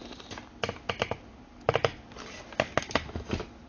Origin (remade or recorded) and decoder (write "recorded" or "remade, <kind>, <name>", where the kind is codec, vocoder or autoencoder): recorded